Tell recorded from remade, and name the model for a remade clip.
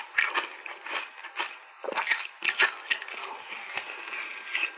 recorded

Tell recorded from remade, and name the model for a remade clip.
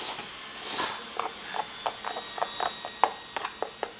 recorded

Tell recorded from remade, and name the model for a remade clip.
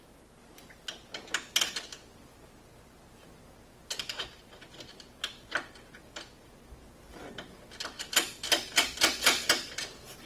recorded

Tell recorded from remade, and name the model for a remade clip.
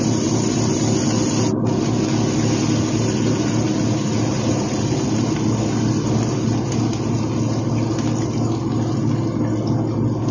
recorded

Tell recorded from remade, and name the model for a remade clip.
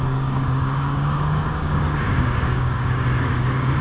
remade, codec, DAC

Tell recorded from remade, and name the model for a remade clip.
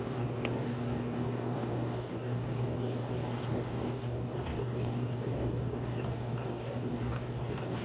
remade, codec, DAC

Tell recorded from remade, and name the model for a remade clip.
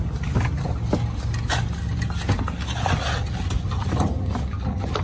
recorded